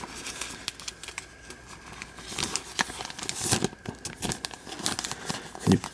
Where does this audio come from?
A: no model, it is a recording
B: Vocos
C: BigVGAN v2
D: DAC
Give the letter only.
A